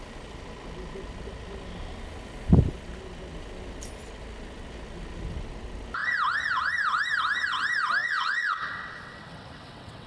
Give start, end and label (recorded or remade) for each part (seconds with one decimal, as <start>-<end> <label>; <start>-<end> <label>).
0.0-8.0 recorded; 8.0-10.1 remade